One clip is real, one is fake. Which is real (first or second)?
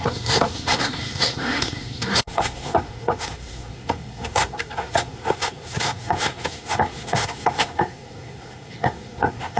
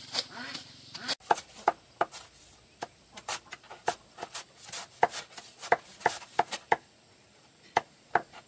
second